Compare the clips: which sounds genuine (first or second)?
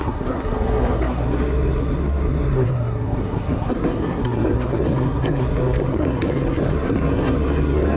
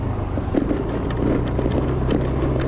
second